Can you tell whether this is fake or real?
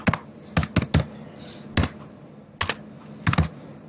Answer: real